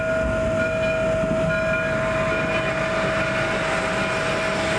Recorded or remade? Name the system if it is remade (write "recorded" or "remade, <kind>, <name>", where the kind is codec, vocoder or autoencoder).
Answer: recorded